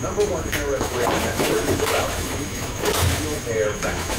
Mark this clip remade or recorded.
remade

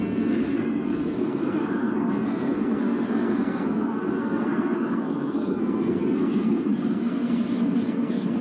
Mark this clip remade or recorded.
remade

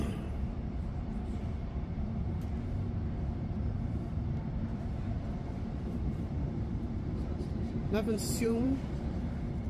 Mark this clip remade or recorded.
remade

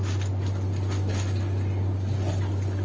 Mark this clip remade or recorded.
recorded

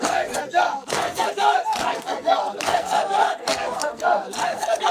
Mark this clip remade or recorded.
remade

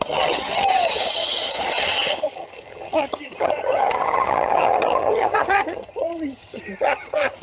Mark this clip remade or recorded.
remade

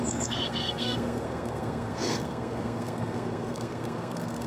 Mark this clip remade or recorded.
remade